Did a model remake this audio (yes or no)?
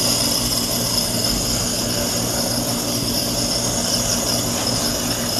no